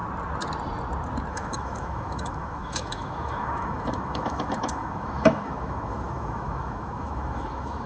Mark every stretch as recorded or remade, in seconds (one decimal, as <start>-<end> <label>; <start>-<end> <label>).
0.0-1.3 recorded; 1.3-7.9 remade